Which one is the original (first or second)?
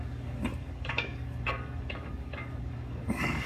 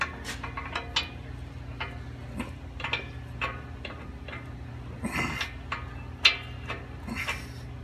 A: second